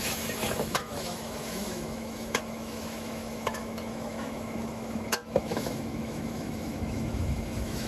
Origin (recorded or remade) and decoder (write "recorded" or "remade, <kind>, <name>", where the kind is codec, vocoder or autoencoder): remade, autoencoder, DAC-VAE